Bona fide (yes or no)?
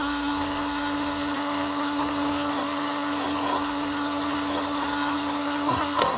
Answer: no